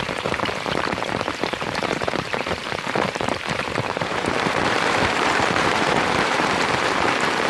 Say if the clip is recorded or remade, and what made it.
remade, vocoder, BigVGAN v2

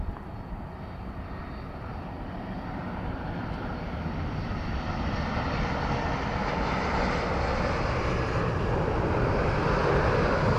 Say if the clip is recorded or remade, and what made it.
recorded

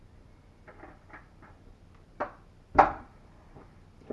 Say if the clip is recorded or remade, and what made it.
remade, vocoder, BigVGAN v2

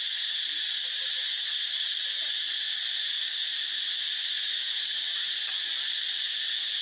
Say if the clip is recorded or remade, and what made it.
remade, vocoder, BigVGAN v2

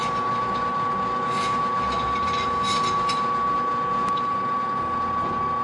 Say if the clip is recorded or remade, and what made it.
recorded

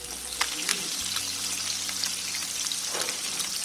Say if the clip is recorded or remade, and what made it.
recorded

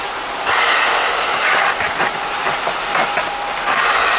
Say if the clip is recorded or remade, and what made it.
recorded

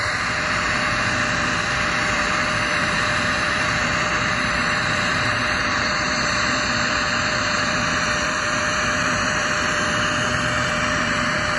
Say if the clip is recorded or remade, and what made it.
remade, vocoder, BigVGAN v2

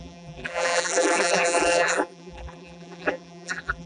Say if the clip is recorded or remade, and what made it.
remade, vocoder, BigVGAN v2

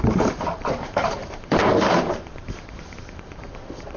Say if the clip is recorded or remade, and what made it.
remade, vocoder, BigVGAN v2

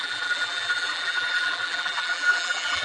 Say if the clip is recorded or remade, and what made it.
remade, vocoder, BigVGAN v2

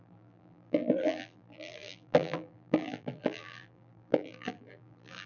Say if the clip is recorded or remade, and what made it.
remade, vocoder, BigVGAN v2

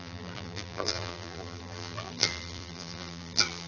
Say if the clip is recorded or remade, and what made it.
remade, vocoder, BigVGAN v2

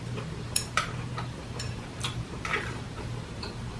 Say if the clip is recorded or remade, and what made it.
remade, vocoder, BigVGAN v2